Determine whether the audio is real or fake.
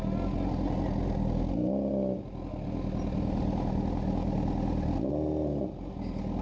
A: real